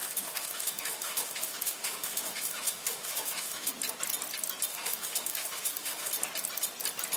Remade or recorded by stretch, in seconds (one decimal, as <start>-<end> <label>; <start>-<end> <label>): 0.0-3.7 remade; 3.7-4.7 recorded; 4.7-6.1 remade; 6.1-7.2 recorded